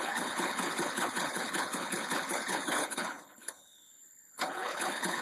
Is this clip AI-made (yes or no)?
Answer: yes